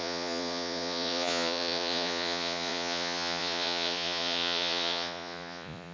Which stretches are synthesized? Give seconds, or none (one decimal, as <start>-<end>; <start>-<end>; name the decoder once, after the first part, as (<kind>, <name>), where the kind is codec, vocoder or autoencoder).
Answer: 0.0-5.9 (vocoder, Vocos)